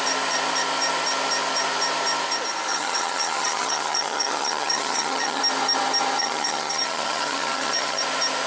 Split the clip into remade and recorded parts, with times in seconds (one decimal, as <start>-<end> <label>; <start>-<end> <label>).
0.0-2.7 recorded; 2.7-5.4 remade; 5.4-6.2 recorded; 6.2-8.0 remade; 8.0-8.5 recorded